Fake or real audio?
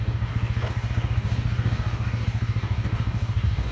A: fake